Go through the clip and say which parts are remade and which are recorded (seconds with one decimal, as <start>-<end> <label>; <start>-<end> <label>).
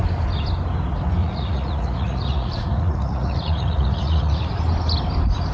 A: 0.0-1.2 recorded; 1.2-4.5 remade; 4.5-5.5 recorded